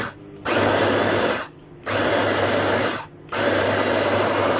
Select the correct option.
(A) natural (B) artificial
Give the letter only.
A